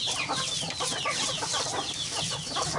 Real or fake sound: real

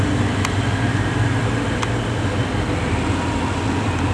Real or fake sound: real